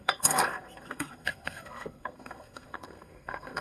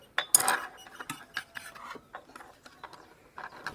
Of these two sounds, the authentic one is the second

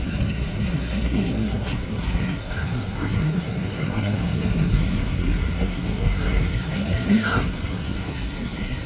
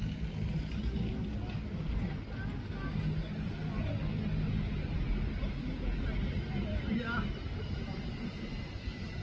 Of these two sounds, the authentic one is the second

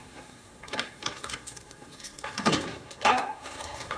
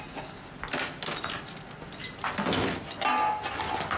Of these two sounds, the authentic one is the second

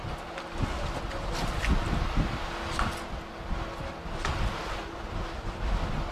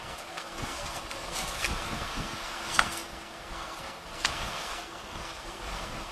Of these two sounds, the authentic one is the first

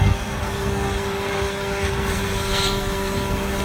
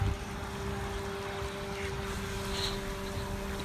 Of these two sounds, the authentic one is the second